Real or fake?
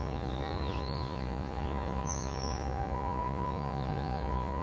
fake